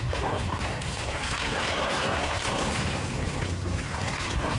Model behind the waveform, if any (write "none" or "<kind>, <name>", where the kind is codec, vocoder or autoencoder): codec, SNAC